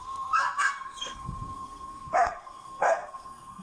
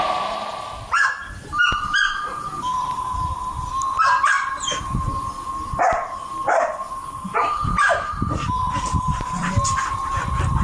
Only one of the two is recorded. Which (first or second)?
second